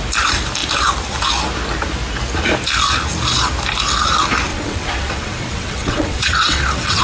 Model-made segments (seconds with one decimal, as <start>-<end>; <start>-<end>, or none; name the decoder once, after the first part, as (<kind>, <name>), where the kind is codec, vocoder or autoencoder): 4.5-7.0 (vocoder, WaveNeXt)